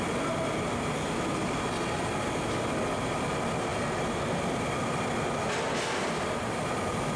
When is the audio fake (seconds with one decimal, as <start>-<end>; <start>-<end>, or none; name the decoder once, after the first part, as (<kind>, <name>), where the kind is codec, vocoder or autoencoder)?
none